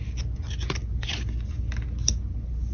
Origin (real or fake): real